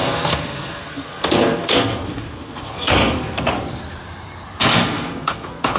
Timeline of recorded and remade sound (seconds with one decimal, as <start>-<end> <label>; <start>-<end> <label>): 0.0-3.5 remade; 3.5-4.7 recorded; 4.7-5.8 remade